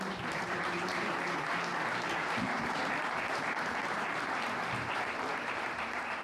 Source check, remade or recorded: remade